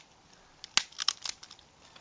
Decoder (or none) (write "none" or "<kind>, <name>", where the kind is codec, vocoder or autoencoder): none